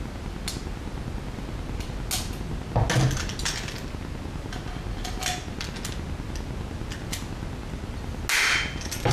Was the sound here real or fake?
real